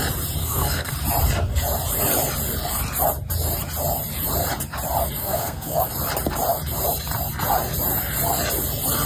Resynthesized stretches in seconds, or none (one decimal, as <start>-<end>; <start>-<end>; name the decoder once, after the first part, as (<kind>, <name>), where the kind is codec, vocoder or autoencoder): 0.4-0.9 (codec, SNAC); 5.2-5.9